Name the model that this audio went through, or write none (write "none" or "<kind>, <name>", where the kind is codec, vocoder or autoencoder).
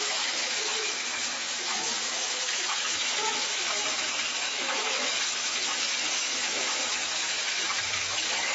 autoencoder, DAC-VAE